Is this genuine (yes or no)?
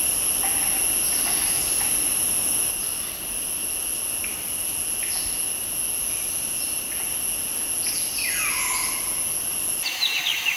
yes